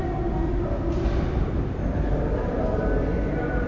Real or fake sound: real